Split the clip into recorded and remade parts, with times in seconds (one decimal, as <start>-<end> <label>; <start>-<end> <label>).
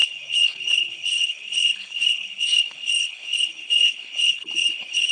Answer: 0.0-5.1 remade